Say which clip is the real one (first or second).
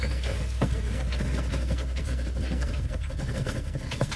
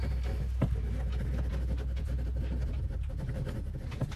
second